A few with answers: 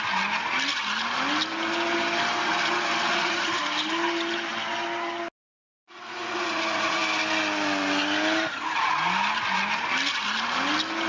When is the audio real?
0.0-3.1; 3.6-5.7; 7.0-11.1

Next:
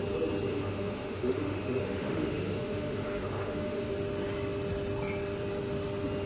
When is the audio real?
0.0-0.5; 3.9-6.3

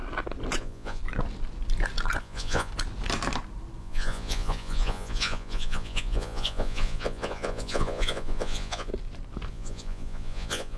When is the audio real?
0.0-0.6; 1.0-2.2; 2.7-3.8; 8.9-9.5

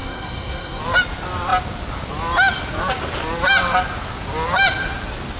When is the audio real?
0.8-5.4

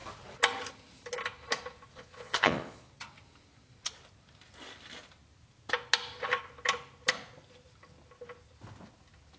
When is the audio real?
0.0-1.9; 2.9-9.4

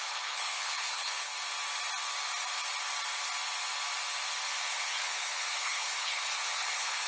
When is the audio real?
1.3-4.7